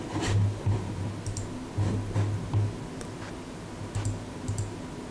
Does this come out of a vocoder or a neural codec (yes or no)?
no